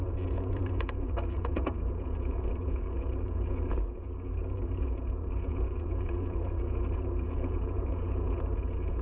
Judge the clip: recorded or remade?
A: remade